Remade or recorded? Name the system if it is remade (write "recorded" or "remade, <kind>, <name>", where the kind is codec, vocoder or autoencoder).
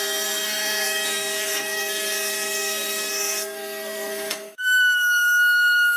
remade, codec, SNAC